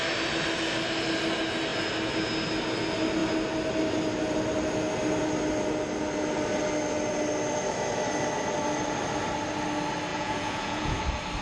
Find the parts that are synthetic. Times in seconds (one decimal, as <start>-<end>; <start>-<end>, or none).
10.1-11.0